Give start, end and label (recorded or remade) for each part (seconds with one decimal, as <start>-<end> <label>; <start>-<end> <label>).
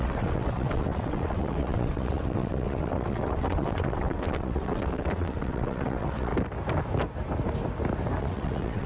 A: 0.0-6.3 remade; 6.3-8.2 recorded; 8.2-8.9 remade